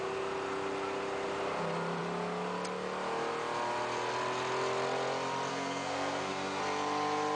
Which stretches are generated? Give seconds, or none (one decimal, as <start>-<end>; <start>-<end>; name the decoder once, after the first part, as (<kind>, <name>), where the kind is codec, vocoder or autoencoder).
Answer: 5.5-6.6 (codec, SNAC)